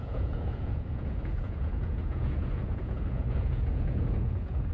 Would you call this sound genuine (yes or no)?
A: no